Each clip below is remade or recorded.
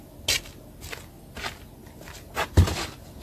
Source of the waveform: recorded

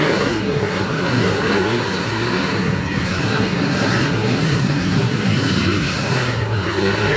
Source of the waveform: remade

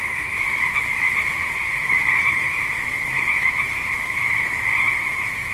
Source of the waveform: remade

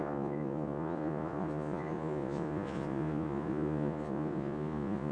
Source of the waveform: remade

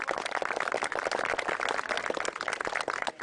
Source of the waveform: recorded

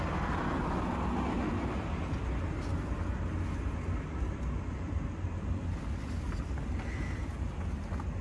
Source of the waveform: recorded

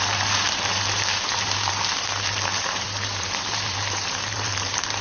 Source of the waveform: remade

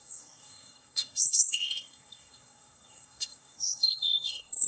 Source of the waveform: remade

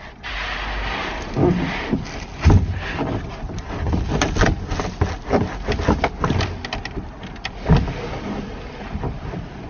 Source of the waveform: recorded